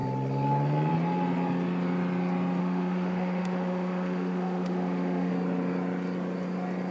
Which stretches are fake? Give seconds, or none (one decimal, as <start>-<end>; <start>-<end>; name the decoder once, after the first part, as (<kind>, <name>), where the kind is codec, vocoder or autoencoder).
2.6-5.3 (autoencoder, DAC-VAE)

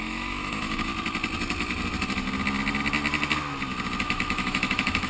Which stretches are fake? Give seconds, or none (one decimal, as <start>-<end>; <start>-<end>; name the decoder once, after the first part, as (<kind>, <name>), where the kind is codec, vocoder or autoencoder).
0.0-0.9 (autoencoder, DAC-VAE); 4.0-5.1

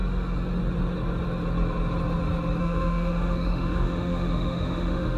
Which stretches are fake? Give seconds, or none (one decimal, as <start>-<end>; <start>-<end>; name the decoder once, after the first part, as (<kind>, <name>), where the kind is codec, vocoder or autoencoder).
2.6-5.2 (autoencoder, DAC-VAE)